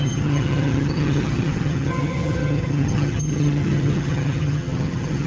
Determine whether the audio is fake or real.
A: fake